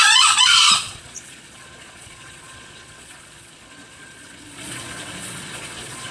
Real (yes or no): no